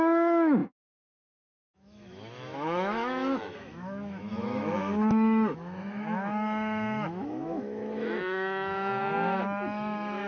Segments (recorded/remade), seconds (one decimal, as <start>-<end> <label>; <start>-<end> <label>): 0.0-10.3 remade